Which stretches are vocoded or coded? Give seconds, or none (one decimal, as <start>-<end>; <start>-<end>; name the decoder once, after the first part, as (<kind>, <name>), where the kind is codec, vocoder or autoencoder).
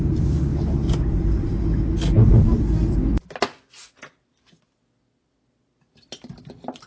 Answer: none